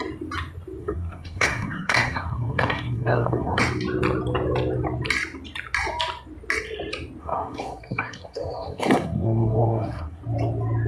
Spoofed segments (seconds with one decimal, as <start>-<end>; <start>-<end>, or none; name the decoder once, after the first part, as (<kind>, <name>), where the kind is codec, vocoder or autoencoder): 0.8-3.6 (codec, SNAC); 7.2-10.2